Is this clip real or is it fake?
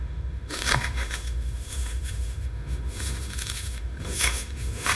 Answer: fake